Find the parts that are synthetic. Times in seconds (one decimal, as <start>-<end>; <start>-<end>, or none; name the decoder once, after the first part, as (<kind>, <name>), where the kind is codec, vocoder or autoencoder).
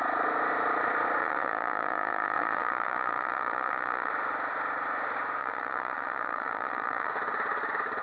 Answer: 1.2-4.1 (vocoder, Vocos); 5.4-7.1